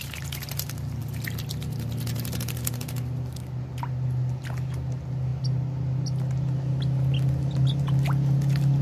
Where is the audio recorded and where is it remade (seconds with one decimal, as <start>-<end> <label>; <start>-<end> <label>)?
0.0-8.8 recorded